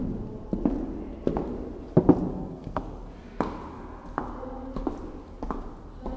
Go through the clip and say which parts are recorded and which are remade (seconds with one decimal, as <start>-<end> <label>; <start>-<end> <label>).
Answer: 0.0-2.3 recorded; 2.3-2.8 remade; 2.8-6.2 recorded